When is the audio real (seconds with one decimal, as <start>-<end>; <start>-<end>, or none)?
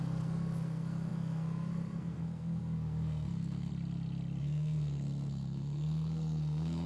3.7-4.4